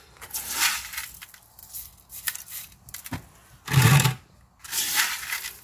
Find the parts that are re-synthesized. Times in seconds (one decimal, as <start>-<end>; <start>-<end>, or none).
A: none